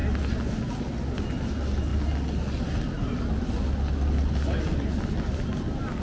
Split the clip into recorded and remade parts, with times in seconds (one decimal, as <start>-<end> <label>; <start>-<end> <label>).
0.0-6.0 recorded